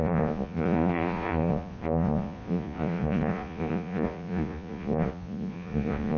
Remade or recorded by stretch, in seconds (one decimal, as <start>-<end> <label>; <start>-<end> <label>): 0.0-6.2 remade

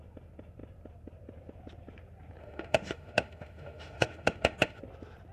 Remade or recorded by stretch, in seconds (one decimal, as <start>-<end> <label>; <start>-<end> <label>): 0.0-2.4 recorded; 2.4-4.8 remade; 4.8-5.3 recorded

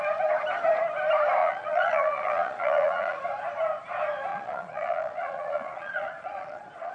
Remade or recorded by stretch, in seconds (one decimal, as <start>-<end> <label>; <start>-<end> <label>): 0.0-1.4 recorded; 1.4-3.2 remade; 3.2-4.3 recorded; 4.3-6.9 remade